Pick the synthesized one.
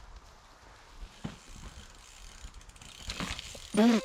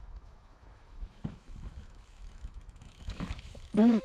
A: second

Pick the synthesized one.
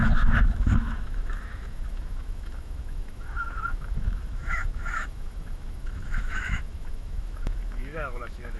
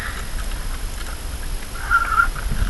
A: first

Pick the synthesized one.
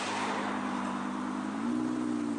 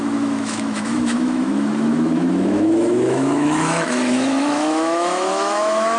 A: second